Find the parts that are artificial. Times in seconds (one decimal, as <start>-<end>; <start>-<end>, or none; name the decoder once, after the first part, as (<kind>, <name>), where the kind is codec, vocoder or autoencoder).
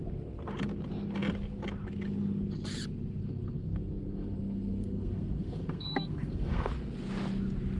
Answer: 3.2-6.7 (codec, SNAC)